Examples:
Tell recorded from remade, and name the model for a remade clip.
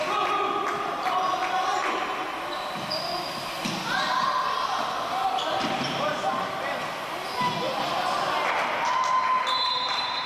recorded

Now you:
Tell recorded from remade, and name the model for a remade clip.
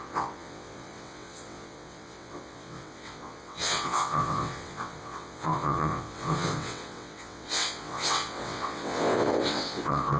remade, vocoder, WaveNeXt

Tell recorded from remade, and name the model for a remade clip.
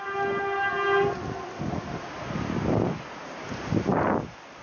recorded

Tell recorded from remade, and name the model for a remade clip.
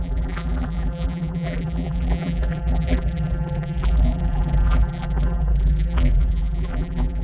remade, vocoder, BigVGAN v2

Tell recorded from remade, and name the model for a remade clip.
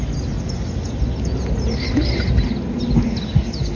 recorded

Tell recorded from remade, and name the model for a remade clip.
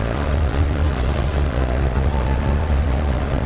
remade, vocoder, Vocos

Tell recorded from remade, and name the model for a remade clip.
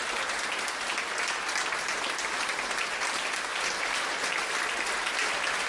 recorded